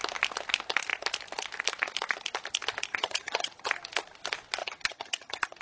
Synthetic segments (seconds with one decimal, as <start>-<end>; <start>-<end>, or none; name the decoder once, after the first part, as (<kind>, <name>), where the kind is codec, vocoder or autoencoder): 2.9-3.7 (vocoder, HiFi-GAN); 4.6-5.6